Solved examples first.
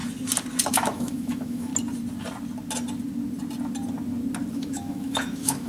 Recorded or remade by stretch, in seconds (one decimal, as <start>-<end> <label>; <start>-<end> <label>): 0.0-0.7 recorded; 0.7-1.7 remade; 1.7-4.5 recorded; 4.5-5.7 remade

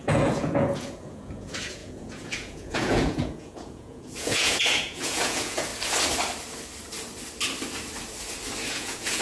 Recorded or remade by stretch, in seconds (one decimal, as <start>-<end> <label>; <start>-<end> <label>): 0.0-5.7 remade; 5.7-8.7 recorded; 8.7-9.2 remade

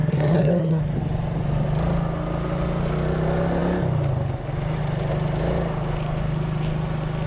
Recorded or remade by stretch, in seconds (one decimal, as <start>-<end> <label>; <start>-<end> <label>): 0.0-0.8 remade; 0.8-7.3 recorded